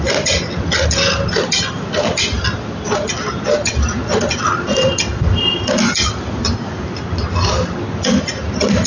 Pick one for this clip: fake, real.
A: real